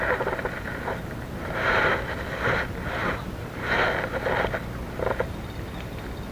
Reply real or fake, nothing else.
real